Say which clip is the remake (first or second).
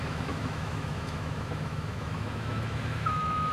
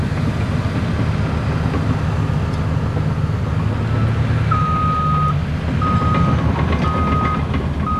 first